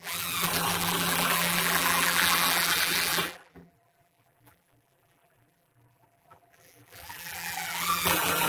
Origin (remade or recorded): remade